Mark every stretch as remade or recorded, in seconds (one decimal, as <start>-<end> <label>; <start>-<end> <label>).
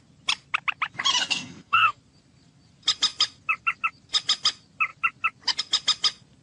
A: 0.0-1.2 recorded; 1.2-2.0 remade; 2.0-6.4 recorded